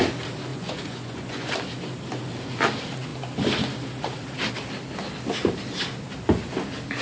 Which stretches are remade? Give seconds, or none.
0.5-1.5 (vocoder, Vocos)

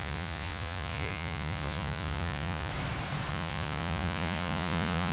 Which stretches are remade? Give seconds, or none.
0.0-2.7 (vocoder, Vocos); 3.3-5.1

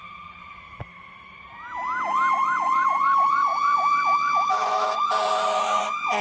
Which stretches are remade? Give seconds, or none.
2.3-6.2 (vocoder, Vocos)

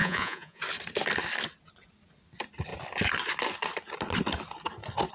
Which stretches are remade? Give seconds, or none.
0.0-0.6 (vocoder, Vocos)

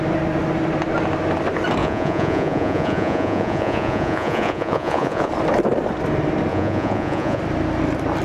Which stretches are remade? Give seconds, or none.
1.8-5.3 (vocoder, Vocos); 6.5-7.4